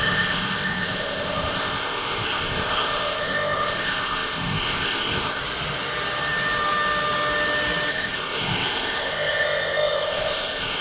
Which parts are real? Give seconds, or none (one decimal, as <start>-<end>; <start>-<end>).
5.4-7.9